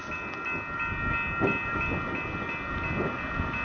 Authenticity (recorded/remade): recorded